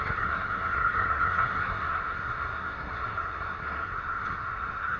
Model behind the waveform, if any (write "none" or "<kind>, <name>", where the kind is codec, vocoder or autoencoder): codec, SNAC